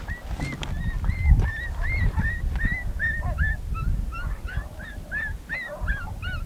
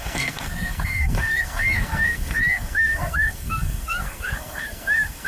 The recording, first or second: first